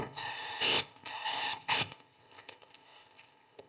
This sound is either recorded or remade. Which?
remade